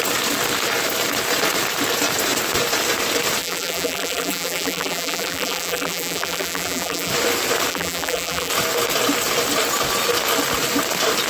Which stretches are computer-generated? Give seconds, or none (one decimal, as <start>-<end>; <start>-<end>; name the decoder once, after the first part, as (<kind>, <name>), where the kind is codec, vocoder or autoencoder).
3.4-7.1 (vocoder, BigVGAN v2); 7.7-8.5